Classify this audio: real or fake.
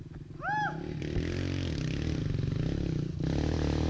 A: real